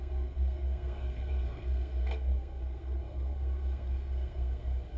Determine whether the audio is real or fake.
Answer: fake